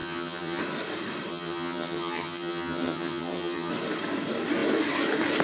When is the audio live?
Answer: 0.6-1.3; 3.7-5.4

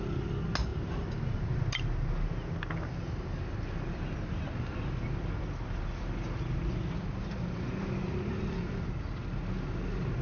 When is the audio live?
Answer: 0.0-10.2

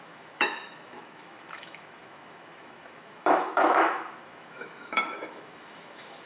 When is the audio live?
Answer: none